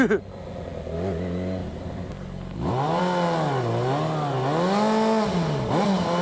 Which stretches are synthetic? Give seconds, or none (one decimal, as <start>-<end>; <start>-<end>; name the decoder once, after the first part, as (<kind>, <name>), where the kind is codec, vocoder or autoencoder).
1.6-3.0 (vocoder, BigVGAN v2)